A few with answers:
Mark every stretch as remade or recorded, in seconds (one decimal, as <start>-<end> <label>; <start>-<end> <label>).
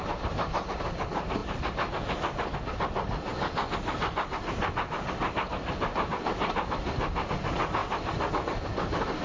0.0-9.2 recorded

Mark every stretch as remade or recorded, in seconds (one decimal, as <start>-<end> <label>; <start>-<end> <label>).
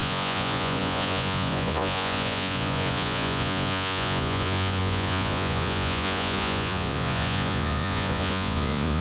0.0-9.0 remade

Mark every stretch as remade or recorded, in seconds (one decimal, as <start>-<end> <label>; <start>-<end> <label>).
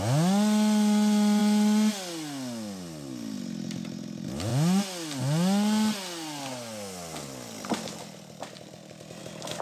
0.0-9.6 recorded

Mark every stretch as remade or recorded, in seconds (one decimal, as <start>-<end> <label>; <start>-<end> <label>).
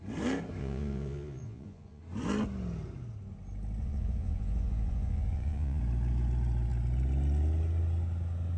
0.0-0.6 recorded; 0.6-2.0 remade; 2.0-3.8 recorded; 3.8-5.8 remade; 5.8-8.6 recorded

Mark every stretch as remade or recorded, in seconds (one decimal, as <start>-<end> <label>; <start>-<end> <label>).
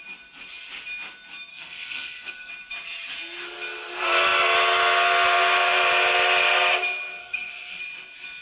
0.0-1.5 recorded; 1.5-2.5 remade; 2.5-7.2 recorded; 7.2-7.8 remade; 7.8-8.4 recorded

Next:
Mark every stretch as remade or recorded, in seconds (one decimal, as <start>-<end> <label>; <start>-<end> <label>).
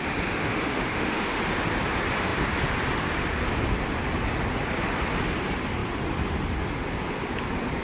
0.0-0.4 recorded; 0.4-1.4 remade; 1.4-7.8 recorded